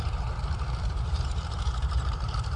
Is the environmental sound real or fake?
fake